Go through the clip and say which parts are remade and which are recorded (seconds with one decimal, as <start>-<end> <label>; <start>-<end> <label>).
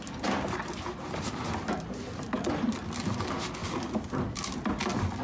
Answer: 0.0-5.2 recorded